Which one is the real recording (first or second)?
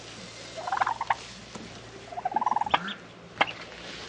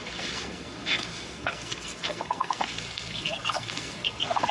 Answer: first